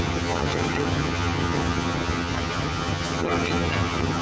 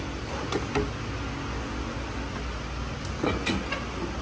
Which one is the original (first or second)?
second